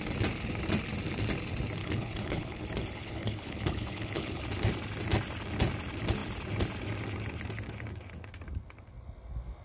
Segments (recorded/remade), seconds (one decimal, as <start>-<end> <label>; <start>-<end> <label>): 0.0-1.8 recorded; 1.8-2.6 remade; 2.6-3.0 recorded; 3.0-4.4 remade; 4.4-9.6 recorded

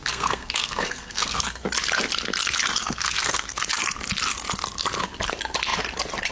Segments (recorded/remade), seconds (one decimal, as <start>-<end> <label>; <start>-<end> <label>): 0.0-1.7 remade; 1.7-2.8 recorded; 2.8-3.6 remade; 3.6-6.3 recorded